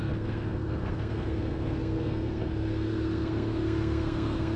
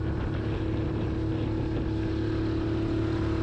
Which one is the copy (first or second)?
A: first